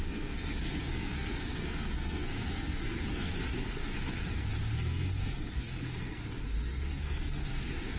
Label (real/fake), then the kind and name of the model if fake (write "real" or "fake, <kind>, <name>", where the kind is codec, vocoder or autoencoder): fake, codec, SNAC